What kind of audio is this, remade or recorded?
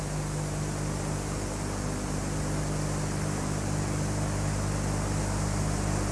recorded